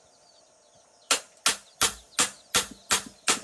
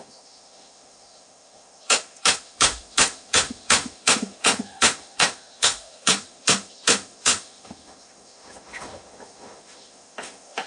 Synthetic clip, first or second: second